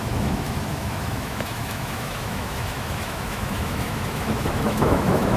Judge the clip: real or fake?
fake